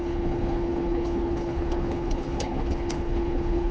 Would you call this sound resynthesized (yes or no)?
yes